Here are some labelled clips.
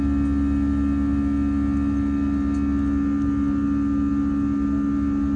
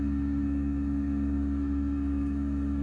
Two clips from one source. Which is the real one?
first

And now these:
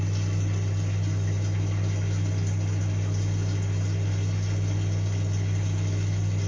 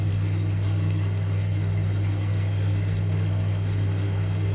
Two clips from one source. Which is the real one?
first